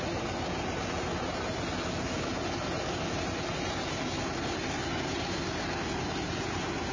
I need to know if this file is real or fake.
real